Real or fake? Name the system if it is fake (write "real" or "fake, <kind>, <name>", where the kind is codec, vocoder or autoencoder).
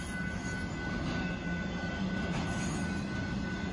real